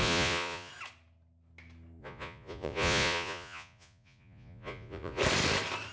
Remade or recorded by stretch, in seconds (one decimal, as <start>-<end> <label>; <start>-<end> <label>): 0.0-0.7 remade; 0.7-2.0 recorded; 2.0-5.2 remade; 5.2-5.9 recorded